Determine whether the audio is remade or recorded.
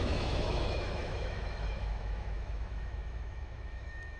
remade